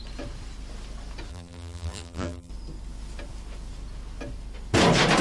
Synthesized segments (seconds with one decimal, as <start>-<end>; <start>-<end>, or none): 1.3-2.5